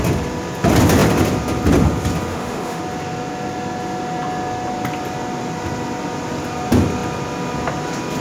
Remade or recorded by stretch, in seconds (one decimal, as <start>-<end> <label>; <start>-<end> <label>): 0.0-2.3 recorded; 2.3-2.8 remade; 2.8-8.2 recorded